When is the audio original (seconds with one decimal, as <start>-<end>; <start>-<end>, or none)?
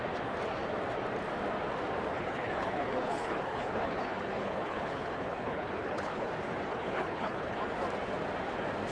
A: 0.0-2.1; 6.3-6.7; 7.6-8.9